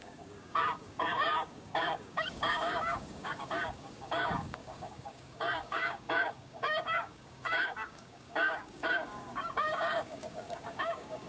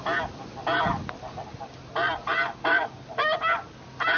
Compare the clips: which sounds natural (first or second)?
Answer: second